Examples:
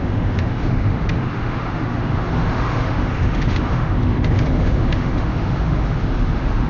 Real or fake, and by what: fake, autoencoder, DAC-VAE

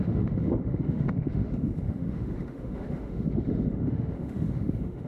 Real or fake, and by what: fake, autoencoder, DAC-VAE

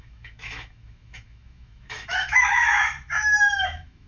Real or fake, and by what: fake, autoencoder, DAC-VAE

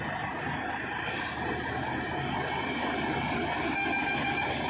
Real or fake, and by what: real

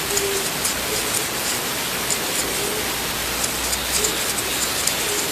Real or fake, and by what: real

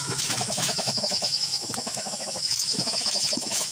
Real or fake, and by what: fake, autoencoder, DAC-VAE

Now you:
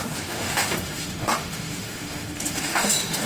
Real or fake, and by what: fake, autoencoder, DAC-VAE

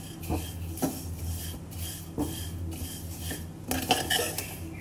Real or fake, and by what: real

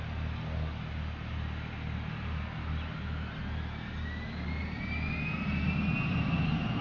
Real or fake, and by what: real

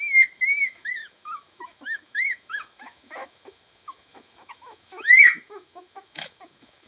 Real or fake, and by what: fake, autoencoder, DAC-VAE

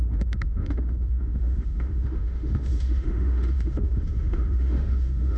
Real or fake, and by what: fake, autoencoder, DAC-VAE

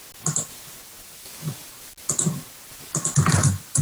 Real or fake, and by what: real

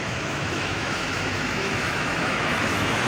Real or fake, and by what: fake, autoencoder, DAC-VAE